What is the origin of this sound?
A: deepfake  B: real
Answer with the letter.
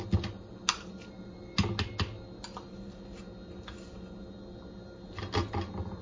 B